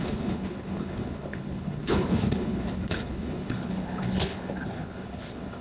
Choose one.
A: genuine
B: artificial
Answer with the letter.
B